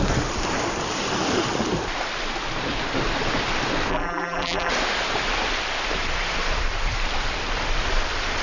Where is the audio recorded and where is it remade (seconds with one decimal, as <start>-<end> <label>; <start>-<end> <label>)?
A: 0.0-3.9 recorded; 3.9-4.7 remade; 4.7-8.4 recorded